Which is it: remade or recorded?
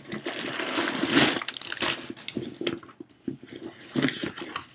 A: recorded